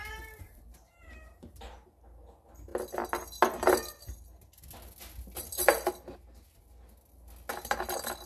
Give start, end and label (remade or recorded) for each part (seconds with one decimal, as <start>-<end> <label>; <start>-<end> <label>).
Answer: 0.0-1.4 remade; 1.4-8.3 recorded